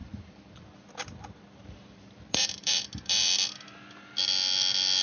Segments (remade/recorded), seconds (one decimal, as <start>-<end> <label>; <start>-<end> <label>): 0.0-0.9 remade; 0.9-1.5 recorded; 1.5-3.3 remade; 3.3-5.0 recorded